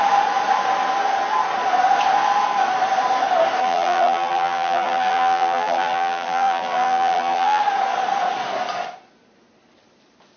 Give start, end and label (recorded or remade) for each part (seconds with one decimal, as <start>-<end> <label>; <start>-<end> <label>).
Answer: 0.0-3.6 recorded; 3.6-7.6 remade; 7.6-10.4 recorded

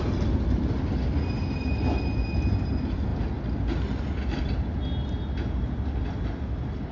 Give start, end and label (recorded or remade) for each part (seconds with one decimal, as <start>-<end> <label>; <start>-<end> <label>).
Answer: 0.0-6.9 recorded

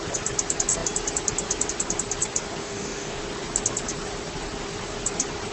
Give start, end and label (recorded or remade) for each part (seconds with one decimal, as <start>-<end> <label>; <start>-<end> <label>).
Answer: 0.0-2.6 recorded; 2.6-3.2 remade; 3.2-5.5 recorded

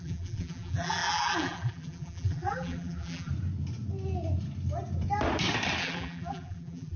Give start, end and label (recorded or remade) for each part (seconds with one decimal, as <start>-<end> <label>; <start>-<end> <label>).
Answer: 0.0-3.3 remade; 3.3-5.8 recorded; 5.8-7.0 remade

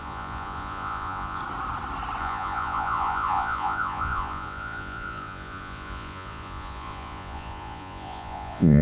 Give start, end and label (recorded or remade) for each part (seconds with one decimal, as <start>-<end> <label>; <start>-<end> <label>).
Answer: 0.0-1.4 remade; 1.4-2.2 recorded; 2.2-8.8 remade

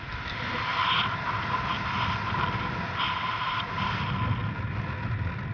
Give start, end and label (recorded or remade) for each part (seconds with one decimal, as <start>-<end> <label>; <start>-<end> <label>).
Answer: 0.0-5.5 recorded